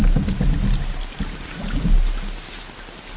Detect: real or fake real